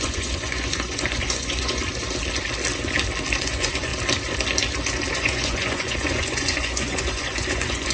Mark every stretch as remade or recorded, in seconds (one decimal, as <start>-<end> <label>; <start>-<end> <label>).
0.0-1.8 remade; 1.8-3.4 recorded; 3.4-3.9 remade; 3.9-5.1 recorded; 5.1-7.9 remade